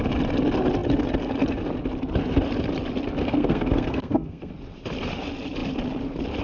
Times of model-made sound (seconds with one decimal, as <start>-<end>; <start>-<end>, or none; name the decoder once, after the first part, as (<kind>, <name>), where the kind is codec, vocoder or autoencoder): 3.2-4.5 (codec, SNAC)